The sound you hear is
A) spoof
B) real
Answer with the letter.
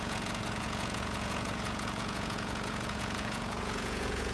A